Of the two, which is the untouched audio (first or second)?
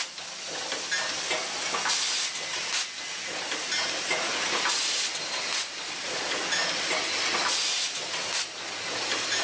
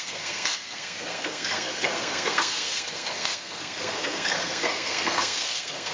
first